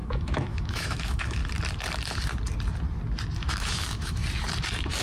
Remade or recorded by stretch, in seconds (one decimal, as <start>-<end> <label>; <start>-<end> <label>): 0.0-1.4 remade; 1.4-3.5 recorded; 3.5-4.2 remade; 4.2-5.0 recorded